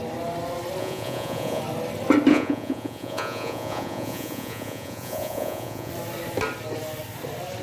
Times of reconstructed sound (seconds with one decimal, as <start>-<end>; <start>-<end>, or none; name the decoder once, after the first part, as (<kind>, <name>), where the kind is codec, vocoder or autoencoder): 0.8-1.6 (vocoder, Vocos); 2.3-5.9